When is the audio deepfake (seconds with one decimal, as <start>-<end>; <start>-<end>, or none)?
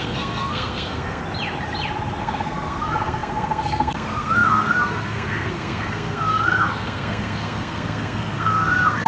0.0-1.2; 2.2-9.1